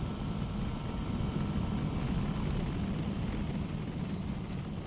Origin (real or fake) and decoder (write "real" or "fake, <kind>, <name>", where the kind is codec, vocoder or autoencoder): real